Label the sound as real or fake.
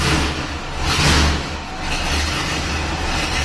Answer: real